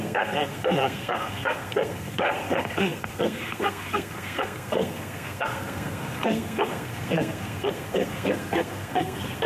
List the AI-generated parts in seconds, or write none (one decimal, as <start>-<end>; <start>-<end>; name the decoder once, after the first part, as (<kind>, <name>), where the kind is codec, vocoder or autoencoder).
0.0-9.5 (codec, SNAC)